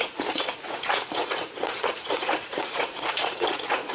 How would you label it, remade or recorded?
remade